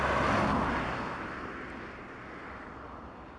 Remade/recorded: recorded